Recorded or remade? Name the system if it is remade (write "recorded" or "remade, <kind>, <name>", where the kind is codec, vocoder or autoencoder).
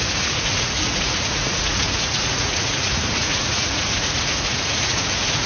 remade, vocoder, Vocos